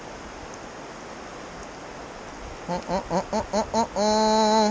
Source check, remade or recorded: recorded